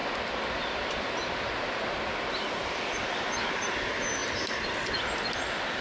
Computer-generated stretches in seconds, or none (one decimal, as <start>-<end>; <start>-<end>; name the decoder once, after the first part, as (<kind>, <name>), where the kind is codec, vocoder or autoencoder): none